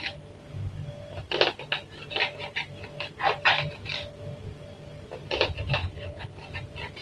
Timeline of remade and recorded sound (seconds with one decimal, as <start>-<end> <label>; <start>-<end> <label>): 0.0-5.8 recorded; 5.8-6.3 remade; 6.3-7.0 recorded